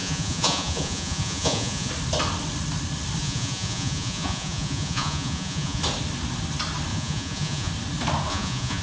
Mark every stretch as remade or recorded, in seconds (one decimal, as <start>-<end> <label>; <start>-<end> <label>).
0.0-1.9 remade; 1.9-3.2 recorded; 3.2-5.8 remade; 5.8-6.9 recorded; 6.9-7.7 remade; 7.7-8.3 recorded; 8.3-8.8 remade